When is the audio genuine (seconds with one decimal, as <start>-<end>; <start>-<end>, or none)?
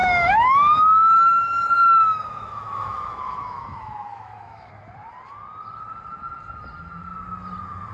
4.7-7.9